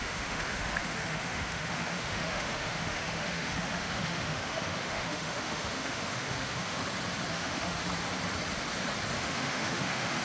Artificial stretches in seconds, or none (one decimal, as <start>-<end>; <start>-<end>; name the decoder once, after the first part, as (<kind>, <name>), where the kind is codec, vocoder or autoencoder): 0.0-6.8 (autoencoder, DAC-VAE); 7.3-7.8; 9.2-10.2